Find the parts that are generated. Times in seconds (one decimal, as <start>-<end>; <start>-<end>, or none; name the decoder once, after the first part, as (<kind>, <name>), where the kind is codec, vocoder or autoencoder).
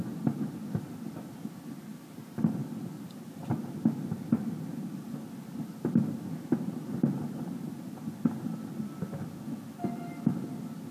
none